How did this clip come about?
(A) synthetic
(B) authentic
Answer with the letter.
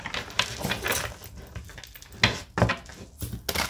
B